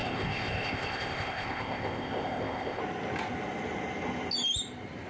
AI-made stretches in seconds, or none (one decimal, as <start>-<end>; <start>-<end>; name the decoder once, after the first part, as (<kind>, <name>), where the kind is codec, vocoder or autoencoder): 0.0-2.8 (codec, ZipCodec)